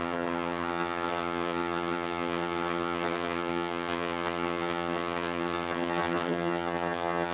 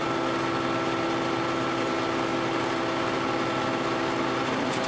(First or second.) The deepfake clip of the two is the first